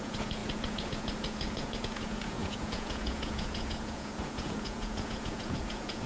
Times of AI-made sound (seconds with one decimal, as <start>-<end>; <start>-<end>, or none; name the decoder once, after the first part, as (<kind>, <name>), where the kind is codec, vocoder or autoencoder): 0.0-6.1 (vocoder, Vocos)